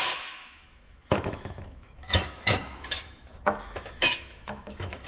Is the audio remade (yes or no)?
yes